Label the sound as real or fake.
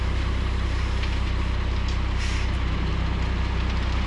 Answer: real